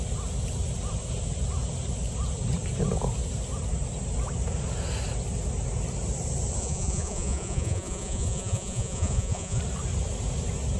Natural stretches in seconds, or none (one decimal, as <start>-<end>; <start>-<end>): 0.0-6.6; 9.6-10.8